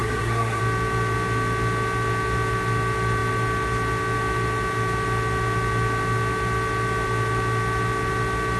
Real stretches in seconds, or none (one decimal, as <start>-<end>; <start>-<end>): 0.6-8.6